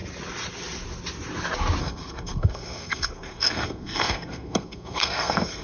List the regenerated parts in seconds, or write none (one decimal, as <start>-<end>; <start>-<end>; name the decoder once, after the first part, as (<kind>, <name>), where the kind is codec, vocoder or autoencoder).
1.8-5.6 (codec, SNAC)